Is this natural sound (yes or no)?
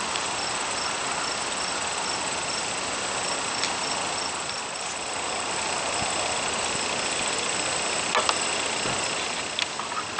yes